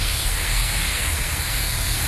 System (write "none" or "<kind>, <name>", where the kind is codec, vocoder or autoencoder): codec, SNAC